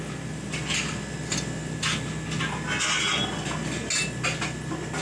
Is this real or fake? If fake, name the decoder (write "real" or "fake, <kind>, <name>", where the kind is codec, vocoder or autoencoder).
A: real